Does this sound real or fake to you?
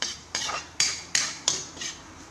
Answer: fake